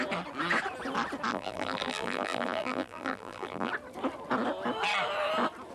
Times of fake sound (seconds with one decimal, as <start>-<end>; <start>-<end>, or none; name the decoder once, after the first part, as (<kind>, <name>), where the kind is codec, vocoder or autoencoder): 1.3-3.7 (vocoder, BigVGAN v2)